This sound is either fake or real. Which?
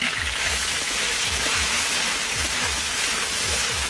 fake